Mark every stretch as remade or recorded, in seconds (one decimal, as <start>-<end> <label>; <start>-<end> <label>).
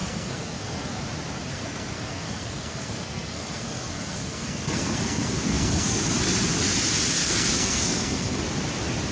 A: 0.0-1.0 remade; 1.0-1.5 recorded; 1.5-6.0 remade; 6.0-7.2 recorded; 7.2-8.4 remade; 8.4-9.1 recorded